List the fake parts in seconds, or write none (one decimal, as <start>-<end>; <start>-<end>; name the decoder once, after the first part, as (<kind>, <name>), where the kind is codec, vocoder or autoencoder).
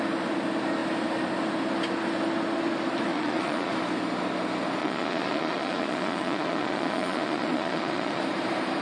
3.1-3.7 (vocoder, Vocos); 4.8-8.2